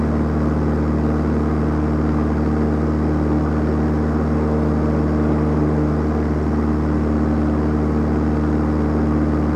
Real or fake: real